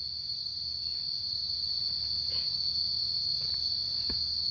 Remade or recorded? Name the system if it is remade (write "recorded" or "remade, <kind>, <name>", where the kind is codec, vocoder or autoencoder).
recorded